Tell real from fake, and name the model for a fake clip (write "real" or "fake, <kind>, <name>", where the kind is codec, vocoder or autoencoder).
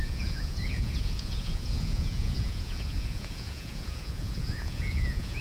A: fake, vocoder, Vocos